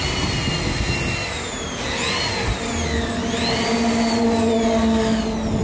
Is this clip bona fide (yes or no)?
yes